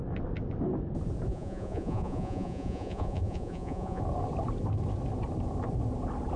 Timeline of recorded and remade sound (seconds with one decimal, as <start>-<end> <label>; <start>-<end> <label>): 0.0-1.3 recorded; 1.3-4.0 remade; 4.0-6.4 recorded